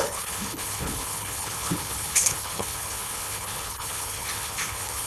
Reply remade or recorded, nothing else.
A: remade